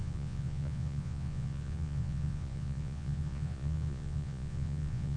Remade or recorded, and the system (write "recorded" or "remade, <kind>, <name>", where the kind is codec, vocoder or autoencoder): remade, vocoder, Vocos